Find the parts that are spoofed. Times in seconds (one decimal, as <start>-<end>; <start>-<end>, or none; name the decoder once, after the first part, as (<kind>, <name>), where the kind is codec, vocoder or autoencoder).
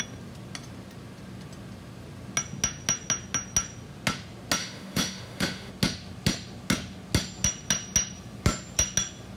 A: 4.6-5.7 (autoencoder, DAC-VAE)